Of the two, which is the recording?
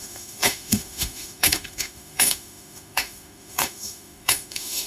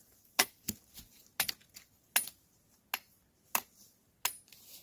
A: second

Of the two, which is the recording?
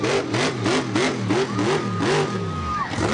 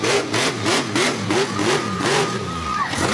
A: first